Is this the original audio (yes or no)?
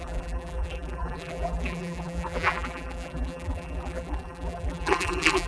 no